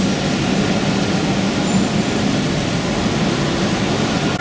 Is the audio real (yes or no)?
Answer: yes